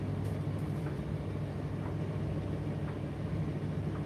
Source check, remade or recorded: recorded